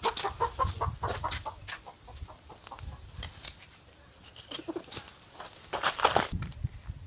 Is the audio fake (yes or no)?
no